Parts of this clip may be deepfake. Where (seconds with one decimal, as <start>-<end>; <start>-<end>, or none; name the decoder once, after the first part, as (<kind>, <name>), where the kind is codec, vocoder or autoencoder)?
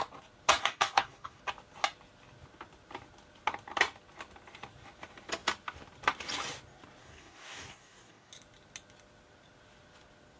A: 0.6-1.4 (codec, DAC); 7.0-8.3